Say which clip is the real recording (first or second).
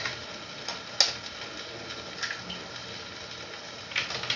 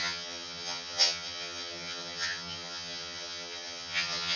first